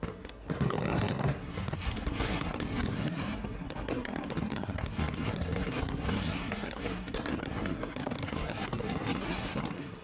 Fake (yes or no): yes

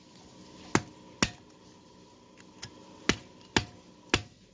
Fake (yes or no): no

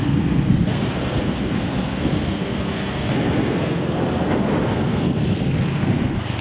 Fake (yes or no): yes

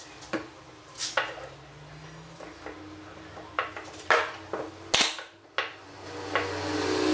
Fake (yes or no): no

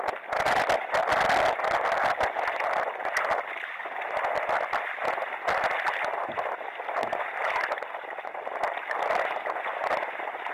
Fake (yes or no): no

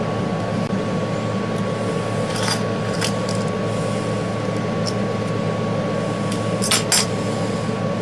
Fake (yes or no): no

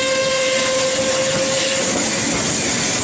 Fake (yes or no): no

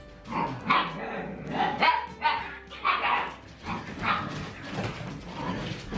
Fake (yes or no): no